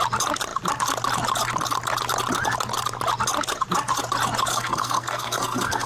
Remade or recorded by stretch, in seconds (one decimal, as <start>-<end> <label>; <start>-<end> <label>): 0.0-4.5 recorded; 4.5-5.9 remade